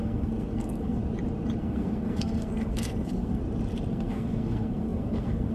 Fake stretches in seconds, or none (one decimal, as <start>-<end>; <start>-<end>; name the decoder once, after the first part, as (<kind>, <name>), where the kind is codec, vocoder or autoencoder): 0.0-1.0 (codec, SNAC); 1.6-3.4; 3.9-5.5